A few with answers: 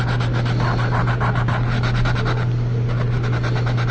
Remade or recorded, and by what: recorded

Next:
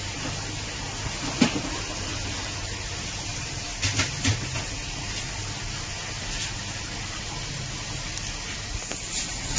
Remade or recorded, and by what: recorded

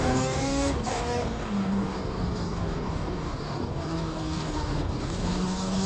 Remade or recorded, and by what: remade, codec, DAC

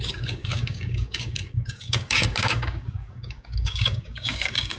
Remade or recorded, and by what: remade, codec, DAC